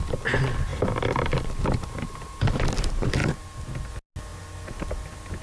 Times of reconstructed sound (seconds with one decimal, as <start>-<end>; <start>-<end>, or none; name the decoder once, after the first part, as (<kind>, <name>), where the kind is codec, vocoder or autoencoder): 0.7-2.7 (vocoder, BigVGAN v2)